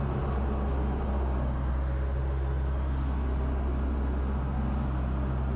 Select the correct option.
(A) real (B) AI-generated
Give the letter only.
A